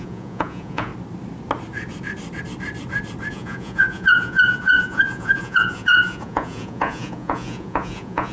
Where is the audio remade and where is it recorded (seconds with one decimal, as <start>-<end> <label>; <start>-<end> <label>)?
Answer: 0.0-0.9 remade; 0.9-3.3 recorded; 3.3-8.3 remade